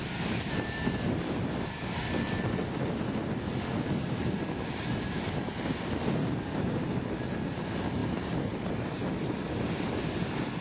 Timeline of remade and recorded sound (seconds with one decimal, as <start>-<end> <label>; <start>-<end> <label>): 0.0-10.6 recorded